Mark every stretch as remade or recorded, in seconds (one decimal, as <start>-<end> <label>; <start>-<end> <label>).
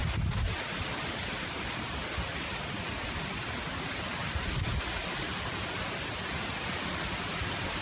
0.0-7.8 recorded